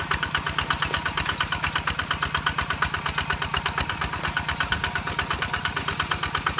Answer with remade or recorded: recorded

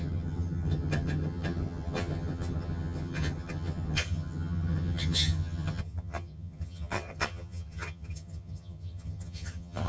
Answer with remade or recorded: remade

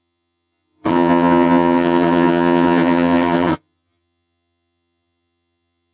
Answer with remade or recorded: remade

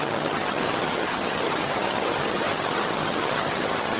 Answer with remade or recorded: remade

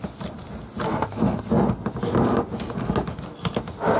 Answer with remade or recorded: recorded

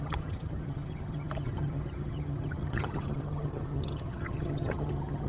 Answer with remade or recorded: remade